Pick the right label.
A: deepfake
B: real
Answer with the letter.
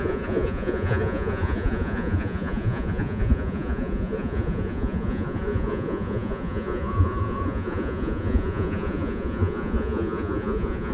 A